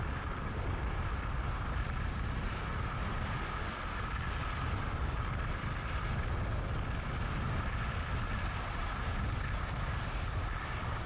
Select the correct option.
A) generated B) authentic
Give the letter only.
B